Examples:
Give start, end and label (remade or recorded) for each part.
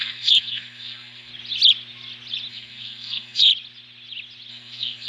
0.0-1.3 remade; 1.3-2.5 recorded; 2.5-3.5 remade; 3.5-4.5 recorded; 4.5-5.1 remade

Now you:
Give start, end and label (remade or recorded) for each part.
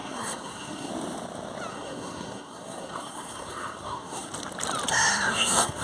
0.0-0.9 remade; 0.9-1.7 recorded; 1.7-4.3 remade; 4.3-4.9 recorded; 4.9-5.8 remade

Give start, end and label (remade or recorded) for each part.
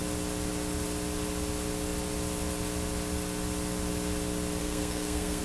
0.0-4.6 recorded; 4.6-5.4 remade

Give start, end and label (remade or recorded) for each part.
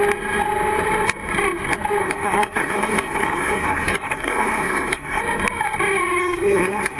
0.0-2.0 recorded; 2.0-5.2 remade; 5.2-6.2 recorded; 6.2-7.0 remade